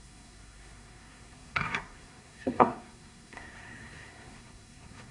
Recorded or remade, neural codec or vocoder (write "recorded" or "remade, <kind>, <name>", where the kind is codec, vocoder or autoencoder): remade, codec, SNAC